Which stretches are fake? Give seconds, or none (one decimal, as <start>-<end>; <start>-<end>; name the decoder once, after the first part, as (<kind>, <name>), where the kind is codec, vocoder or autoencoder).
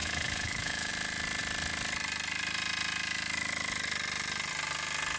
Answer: 0.0-0.9 (autoencoder, DAC-VAE)